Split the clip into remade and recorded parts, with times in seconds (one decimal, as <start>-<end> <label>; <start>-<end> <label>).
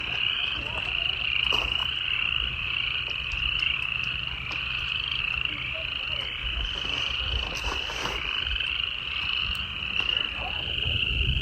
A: 0.0-1.8 recorded; 1.8-2.5 remade; 2.5-11.4 recorded